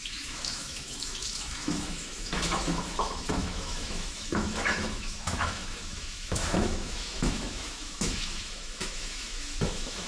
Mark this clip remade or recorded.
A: remade